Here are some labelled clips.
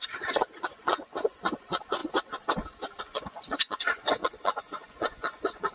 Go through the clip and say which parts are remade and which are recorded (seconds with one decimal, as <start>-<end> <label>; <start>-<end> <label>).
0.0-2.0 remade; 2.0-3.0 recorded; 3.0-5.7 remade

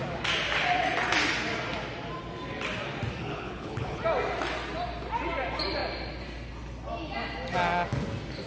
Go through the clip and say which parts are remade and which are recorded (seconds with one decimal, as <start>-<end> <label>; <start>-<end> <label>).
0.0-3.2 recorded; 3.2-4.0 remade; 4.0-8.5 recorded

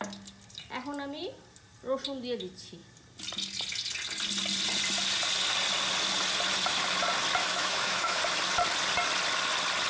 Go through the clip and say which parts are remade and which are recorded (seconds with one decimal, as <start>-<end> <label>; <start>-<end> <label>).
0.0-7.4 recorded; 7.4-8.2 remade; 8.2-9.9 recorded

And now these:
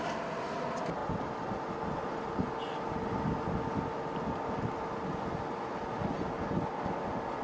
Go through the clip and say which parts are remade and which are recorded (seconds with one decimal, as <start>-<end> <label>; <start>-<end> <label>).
0.0-7.4 recorded